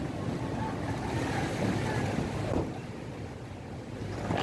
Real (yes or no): yes